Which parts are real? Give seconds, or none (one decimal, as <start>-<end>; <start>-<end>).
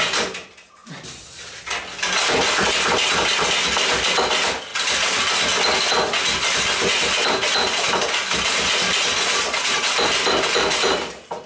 4.7-6.9; 8.5-9.4